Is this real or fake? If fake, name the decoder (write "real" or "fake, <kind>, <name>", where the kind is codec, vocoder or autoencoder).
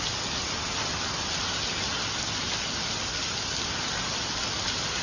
real